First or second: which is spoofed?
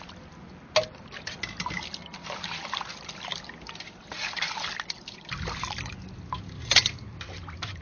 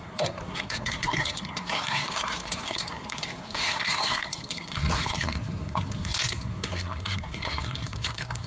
second